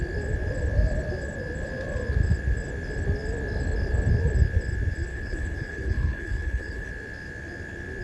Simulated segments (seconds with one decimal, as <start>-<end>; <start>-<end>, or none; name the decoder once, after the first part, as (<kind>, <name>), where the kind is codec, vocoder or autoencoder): 5.1-6.9 (codec, HILCodec)